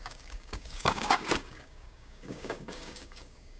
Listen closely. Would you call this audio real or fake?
fake